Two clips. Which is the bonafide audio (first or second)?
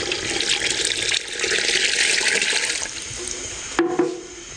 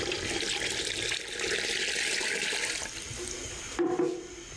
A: first